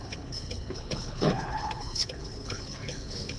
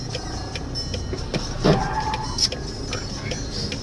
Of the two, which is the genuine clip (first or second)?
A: second